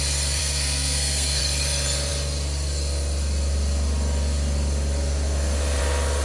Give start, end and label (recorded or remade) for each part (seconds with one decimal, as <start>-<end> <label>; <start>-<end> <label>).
0.0-0.4 recorded; 0.4-1.4 remade; 1.4-6.2 recorded